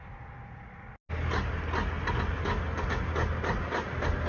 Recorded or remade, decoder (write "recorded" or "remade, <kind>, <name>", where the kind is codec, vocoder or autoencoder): recorded